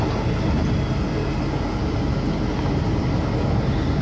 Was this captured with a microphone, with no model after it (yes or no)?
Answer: yes